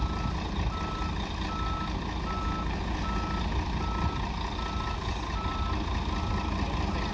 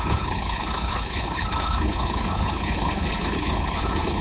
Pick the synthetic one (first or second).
second